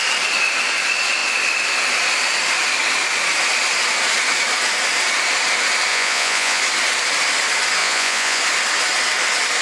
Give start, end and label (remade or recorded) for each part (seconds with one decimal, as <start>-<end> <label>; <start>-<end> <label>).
0.0-5.9 recorded; 5.9-6.6 remade; 6.6-7.8 recorded; 7.8-8.4 remade; 8.4-9.6 recorded